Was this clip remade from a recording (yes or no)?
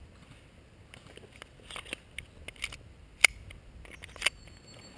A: no